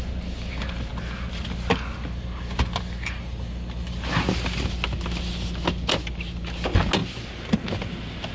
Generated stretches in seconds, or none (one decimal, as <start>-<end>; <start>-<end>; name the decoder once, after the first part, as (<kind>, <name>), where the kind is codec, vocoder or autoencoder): 7.0-7.7 (vocoder, BigVGAN v2)